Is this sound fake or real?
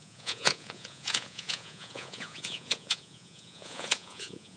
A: fake